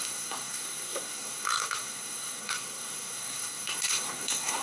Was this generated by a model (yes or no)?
yes